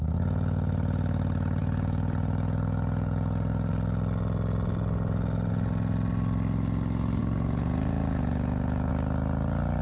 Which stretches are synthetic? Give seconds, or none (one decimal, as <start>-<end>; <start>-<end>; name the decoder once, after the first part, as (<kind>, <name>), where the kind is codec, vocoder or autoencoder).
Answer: 1.6-3.7 (vocoder, Vocos); 7.2-8.9